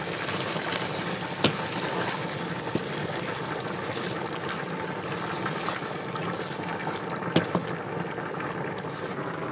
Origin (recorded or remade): recorded